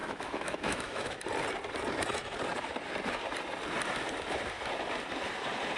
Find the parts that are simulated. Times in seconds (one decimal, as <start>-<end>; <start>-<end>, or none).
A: 0.0-1.2